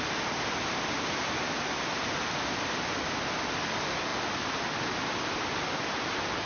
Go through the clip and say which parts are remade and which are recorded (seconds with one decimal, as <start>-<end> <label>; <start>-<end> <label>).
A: 0.0-6.5 recorded